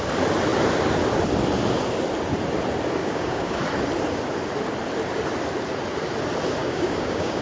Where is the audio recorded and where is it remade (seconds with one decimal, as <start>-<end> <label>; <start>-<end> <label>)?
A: 0.0-3.0 recorded; 3.0-3.6 remade; 3.6-6.6 recorded; 6.6-7.4 remade

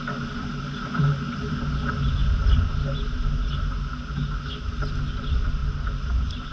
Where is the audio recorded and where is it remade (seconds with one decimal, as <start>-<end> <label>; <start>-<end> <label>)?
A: 0.0-6.5 recorded

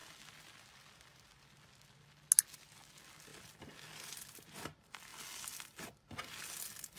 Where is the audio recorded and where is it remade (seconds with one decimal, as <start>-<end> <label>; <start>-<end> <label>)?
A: 0.0-7.0 recorded

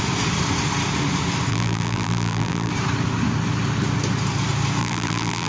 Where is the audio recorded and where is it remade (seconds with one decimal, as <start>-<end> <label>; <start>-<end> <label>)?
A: 0.0-1.5 recorded; 1.5-2.7 remade; 2.7-4.8 recorded; 4.8-5.5 remade

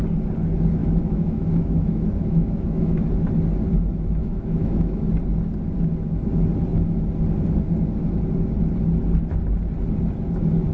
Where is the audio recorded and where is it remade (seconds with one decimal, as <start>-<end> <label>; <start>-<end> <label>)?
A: 0.0-0.8 recorded; 0.8-3.0 remade; 3.0-4.2 recorded; 4.2-5.1 remade; 5.1-10.7 recorded

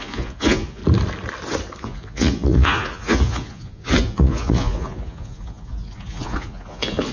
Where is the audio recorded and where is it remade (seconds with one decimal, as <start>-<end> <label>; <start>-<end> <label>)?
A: 0.0-0.8 remade; 0.8-1.8 recorded; 1.8-7.1 remade

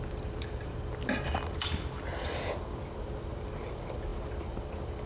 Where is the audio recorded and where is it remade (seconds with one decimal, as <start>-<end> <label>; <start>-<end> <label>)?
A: 0.0-5.1 recorded

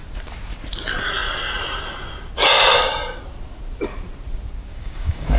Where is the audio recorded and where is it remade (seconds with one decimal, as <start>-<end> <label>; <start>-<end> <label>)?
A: 0.0-4.7 recorded; 4.7-5.4 remade